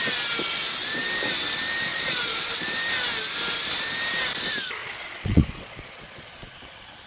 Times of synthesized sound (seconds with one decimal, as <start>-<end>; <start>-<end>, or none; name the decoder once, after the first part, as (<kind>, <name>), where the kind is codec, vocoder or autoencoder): 1.9-2.5 (vocoder, Vocos); 4.8-6.6